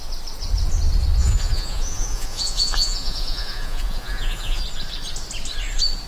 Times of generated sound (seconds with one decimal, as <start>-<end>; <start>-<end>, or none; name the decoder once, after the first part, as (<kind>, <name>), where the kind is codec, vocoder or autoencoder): 1.2-4.6 (vocoder, Vocos)